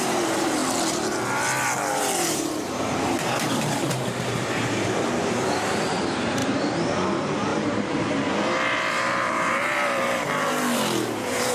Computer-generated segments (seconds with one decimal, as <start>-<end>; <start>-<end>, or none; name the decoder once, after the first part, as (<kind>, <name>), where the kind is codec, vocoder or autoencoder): 0.0-0.6 (vocoder, BigVGAN v2); 1.9-11.5